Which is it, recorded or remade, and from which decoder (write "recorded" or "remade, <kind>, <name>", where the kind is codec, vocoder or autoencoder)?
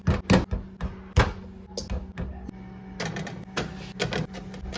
recorded